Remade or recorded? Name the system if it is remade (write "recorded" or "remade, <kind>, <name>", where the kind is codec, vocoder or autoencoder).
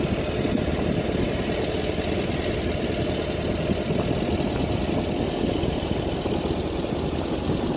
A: recorded